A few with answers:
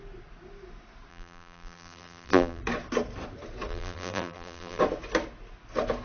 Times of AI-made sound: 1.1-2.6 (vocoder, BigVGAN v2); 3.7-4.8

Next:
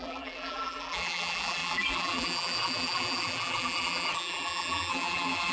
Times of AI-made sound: 0.0-5.5 (vocoder, BigVGAN v2)

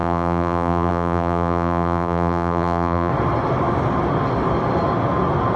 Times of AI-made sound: 0.0-3.1 (vocoder, BigVGAN v2)

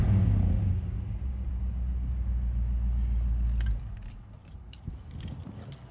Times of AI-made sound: 4.4-4.9 (vocoder, BigVGAN v2)

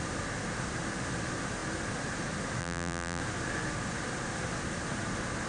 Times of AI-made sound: 2.6-3.2 (vocoder, BigVGAN v2)

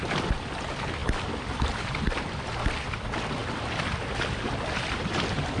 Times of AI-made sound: 1.0-2.1 (vocoder, BigVGAN v2)